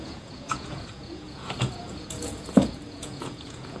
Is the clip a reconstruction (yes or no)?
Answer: yes